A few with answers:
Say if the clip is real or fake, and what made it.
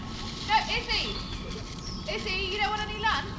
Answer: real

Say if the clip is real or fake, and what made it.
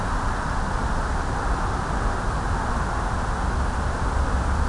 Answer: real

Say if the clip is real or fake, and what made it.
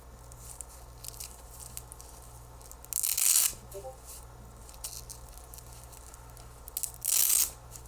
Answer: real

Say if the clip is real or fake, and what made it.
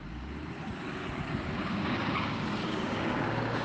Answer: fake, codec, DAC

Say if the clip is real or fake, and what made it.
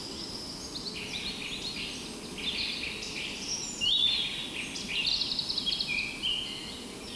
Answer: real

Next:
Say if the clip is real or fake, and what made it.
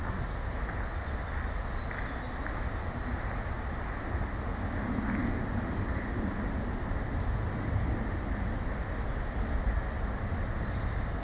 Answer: real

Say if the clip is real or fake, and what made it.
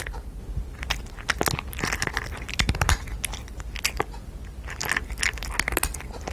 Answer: real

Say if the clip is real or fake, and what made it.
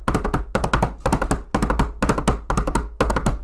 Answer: real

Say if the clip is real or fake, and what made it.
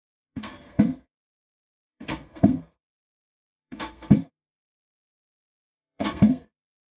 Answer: fake, codec, SNAC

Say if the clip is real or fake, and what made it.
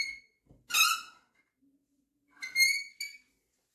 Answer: real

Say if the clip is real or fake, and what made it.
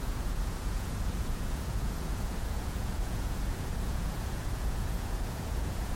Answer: fake, vocoder, Vocos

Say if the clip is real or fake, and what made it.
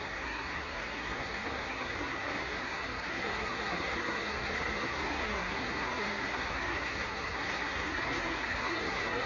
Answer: fake, codec, SNAC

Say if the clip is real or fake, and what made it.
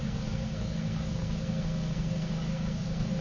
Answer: fake, codec, SNAC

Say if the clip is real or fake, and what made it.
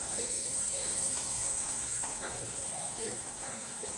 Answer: fake, codec, SNAC